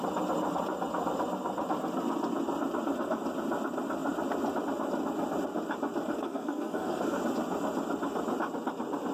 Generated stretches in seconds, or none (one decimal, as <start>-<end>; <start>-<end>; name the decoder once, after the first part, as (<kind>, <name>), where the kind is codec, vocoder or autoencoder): 6.1-7.2 (codec, SNAC)